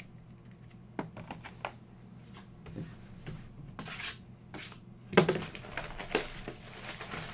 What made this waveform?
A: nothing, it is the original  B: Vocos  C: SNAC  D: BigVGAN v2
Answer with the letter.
A